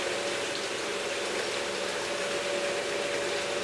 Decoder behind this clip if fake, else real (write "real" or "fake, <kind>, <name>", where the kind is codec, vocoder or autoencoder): real